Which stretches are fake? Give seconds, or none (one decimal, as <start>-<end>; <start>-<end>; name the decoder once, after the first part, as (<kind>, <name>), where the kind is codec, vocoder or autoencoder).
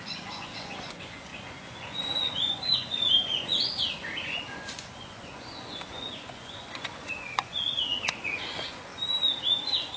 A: 0.0-8.9 (vocoder, Vocos); 9.5-10.0